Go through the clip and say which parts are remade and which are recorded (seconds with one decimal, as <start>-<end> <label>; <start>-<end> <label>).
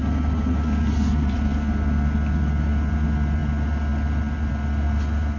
0.0-5.4 recorded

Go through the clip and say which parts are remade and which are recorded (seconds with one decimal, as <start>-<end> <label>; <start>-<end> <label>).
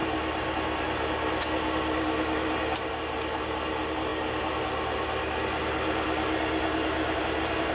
0.0-7.7 recorded